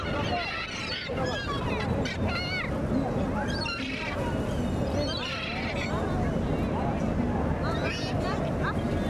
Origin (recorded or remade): recorded